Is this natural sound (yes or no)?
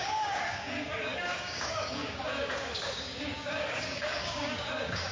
no